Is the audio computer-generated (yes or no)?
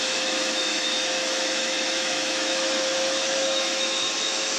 yes